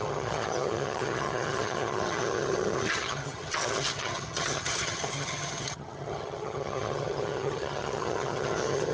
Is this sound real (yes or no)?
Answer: no